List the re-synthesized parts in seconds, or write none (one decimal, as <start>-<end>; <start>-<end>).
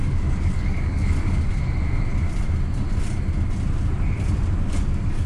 0.0-1.5; 4.7-5.3